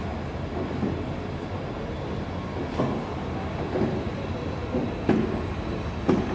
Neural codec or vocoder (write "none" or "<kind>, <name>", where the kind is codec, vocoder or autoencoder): none